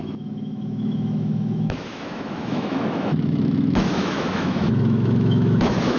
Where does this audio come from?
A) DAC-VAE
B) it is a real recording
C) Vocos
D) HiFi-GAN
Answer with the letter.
A